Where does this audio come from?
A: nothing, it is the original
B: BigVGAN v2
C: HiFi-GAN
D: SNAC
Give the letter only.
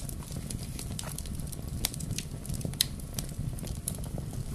B